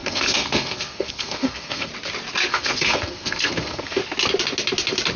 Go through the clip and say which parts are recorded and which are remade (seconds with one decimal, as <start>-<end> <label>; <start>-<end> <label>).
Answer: 0.0-1.9 remade; 1.9-2.5 recorded; 2.5-4.0 remade; 4.0-5.2 recorded